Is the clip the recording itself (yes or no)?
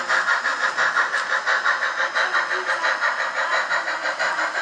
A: yes